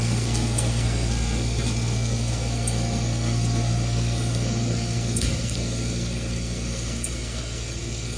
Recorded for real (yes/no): no